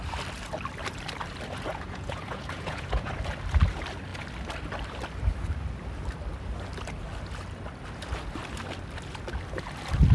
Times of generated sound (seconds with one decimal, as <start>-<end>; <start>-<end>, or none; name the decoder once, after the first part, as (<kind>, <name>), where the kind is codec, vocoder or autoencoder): 1.7-3.1 (vocoder, Vocos)